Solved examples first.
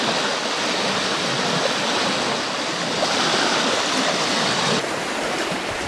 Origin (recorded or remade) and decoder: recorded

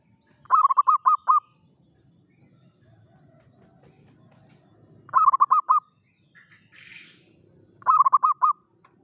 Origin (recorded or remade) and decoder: recorded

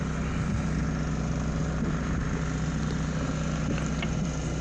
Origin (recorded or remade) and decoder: recorded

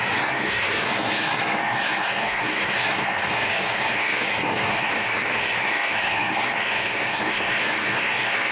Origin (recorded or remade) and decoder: remade, codec, SNAC